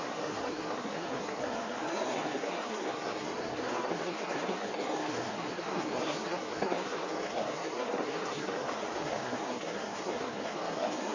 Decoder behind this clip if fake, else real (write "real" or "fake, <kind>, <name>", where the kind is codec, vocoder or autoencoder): fake, codec, SNAC